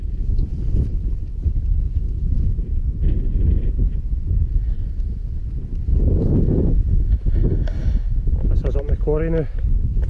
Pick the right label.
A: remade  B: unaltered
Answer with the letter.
B